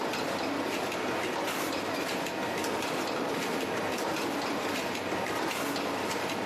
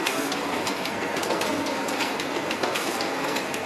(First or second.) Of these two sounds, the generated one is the second